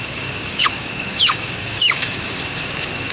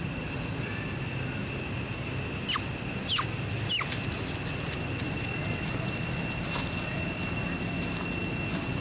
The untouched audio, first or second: second